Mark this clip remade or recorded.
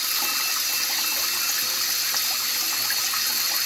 recorded